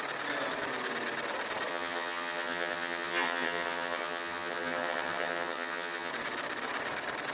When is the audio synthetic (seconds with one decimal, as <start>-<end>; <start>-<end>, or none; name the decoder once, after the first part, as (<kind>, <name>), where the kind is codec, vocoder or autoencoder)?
1.7-6.1 (vocoder, HiFi-GAN)